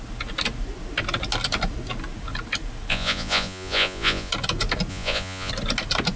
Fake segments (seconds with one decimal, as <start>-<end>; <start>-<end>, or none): 2.9-4.3; 4.9-5.5